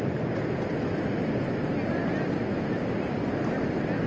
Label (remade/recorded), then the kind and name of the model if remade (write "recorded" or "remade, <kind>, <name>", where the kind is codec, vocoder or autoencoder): recorded